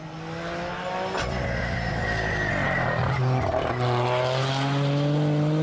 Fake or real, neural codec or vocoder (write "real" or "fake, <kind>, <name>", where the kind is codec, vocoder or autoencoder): real